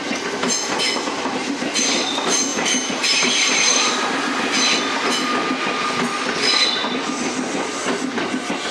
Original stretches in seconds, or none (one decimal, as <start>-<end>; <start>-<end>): 0.0-2.5; 4.0-8.7